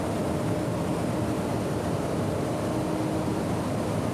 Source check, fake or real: real